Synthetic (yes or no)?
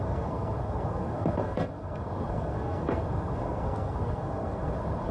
yes